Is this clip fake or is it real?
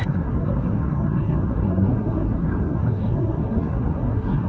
fake